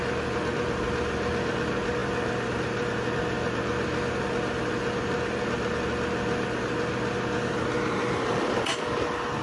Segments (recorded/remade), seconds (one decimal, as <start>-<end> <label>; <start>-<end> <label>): 0.0-9.4 recorded